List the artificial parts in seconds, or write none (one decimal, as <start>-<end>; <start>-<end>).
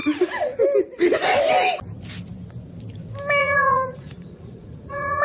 0.0-0.6; 3.4-5.2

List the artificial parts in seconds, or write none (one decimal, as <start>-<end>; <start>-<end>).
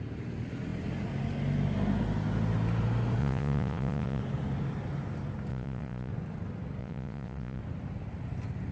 3.2-4.2; 5.5-6.1; 6.8-7.6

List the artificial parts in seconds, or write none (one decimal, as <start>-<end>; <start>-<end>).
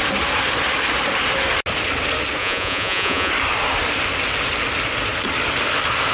2.4-3.3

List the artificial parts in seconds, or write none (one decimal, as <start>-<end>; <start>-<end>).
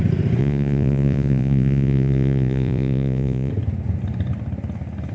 0.4-3.5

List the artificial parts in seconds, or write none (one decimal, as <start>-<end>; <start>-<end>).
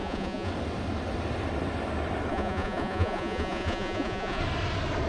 0.0-0.5; 2.3-4.4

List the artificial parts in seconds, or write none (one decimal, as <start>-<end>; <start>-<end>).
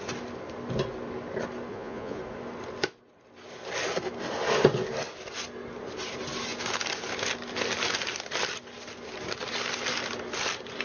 1.7-2.2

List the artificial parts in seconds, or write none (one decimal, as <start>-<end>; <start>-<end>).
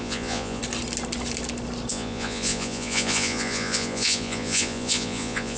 0.0-0.6; 1.9-5.6